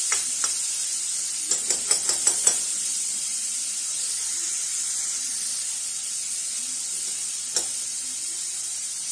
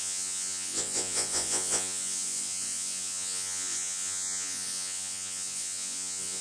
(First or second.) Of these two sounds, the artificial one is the second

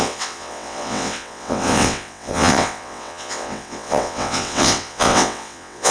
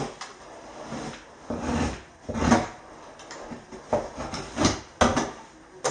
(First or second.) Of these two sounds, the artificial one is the first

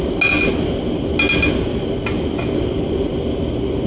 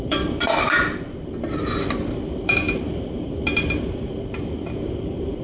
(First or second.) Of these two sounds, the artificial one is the second